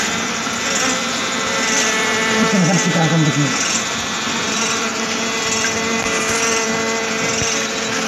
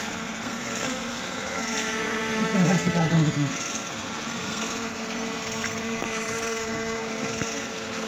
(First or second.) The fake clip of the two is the second